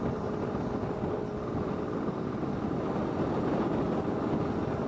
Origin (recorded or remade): recorded